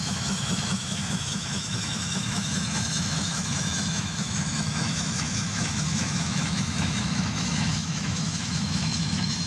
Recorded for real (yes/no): no